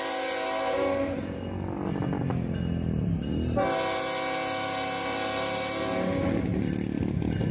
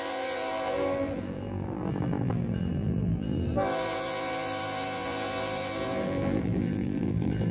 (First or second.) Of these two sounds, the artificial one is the second